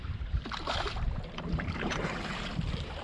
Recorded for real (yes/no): no